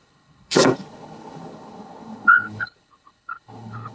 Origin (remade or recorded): remade